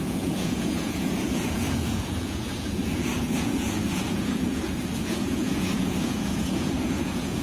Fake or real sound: fake